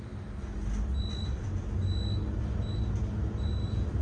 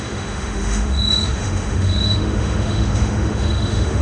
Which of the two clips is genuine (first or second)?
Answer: first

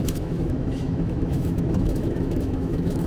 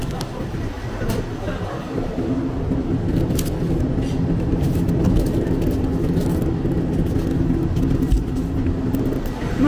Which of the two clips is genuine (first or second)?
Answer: second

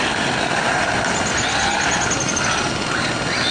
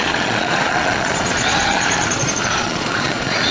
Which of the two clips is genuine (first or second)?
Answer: first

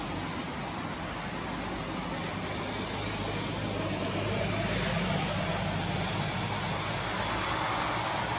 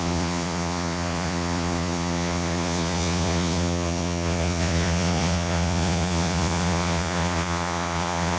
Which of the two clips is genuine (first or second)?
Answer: first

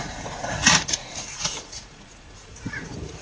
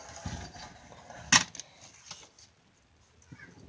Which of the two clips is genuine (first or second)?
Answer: second